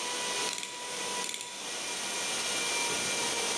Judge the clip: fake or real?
real